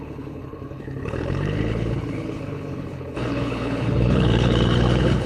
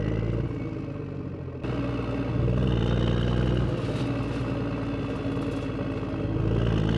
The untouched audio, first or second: second